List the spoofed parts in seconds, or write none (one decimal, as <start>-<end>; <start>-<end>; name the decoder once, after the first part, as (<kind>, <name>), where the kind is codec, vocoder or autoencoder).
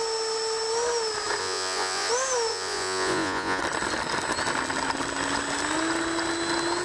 1.4-2.1 (vocoder, Vocos); 2.5-3.6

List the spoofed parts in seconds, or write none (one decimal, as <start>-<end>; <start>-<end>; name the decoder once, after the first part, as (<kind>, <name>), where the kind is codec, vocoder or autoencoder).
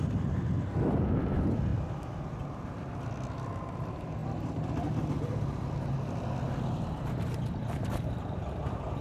none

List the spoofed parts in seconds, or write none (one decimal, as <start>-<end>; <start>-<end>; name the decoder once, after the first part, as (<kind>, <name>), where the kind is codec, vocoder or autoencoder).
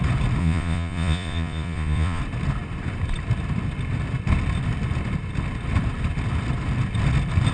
0.4-2.2 (vocoder, Vocos)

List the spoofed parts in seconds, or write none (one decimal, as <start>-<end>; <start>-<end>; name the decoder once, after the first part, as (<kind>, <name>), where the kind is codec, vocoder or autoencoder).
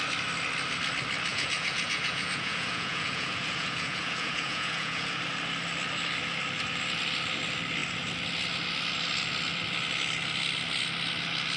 1.3-5.2 (vocoder, Vocos)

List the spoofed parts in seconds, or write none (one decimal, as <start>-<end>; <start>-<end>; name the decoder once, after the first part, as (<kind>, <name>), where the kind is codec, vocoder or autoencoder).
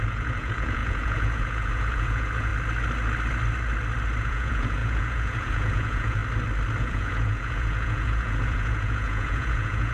0.0-2.5 (vocoder, Vocos); 4.2-6.2; 6.8-9.9